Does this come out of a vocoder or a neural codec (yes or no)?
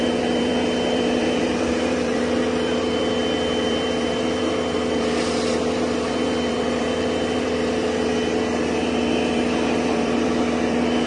yes